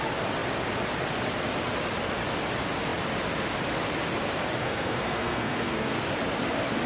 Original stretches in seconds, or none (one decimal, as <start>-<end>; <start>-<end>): 0.0-4.6; 6.0-6.9